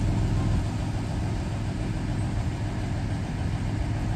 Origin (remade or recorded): recorded